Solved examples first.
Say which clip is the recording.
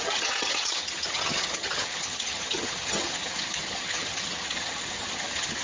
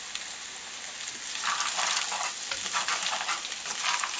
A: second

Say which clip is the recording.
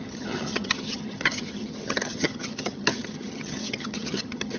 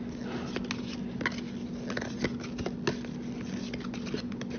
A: second